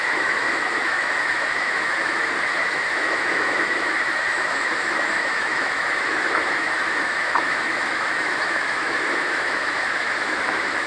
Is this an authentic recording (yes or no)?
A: no